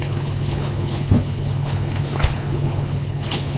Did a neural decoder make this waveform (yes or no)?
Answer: yes